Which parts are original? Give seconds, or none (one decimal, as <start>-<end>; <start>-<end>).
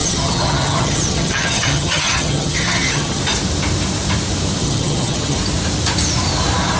3.2-4.6; 5.4-6.8